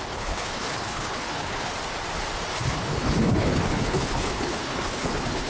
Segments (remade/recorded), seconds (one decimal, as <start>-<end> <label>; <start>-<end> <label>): 0.0-1.7 remade; 1.7-2.5 recorded; 2.5-5.5 remade